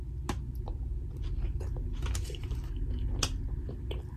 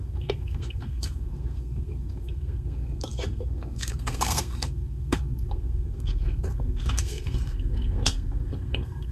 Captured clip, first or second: first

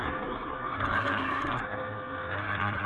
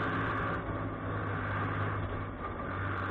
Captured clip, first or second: second